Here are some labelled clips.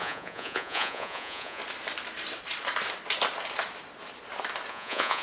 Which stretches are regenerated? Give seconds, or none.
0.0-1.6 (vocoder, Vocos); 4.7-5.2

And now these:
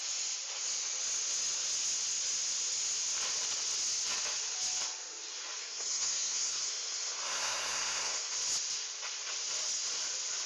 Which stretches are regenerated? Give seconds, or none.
5.6-8.3 (codec, SNAC)

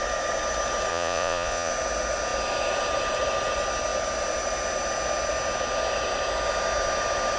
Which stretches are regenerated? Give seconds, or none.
0.9-1.7 (vocoder, Vocos)

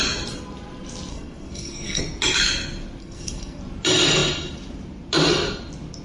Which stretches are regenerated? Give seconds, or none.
1.1-2.0 (codec, SNAC); 3.0-3.6

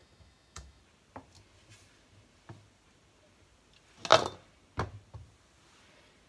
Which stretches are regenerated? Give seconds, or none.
0.0-0.8 (autoencoder, DAC-VAE)

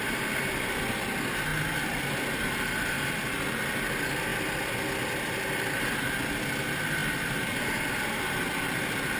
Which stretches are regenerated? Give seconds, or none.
none

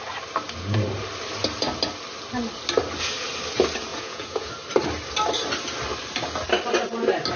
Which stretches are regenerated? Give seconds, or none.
3.9-4.5 (vocoder, Vocos)